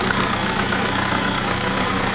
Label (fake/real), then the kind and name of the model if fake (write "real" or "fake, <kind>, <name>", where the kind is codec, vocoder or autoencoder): fake, codec, SNAC